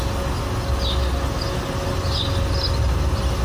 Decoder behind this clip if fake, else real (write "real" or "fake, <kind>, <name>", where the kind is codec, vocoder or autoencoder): real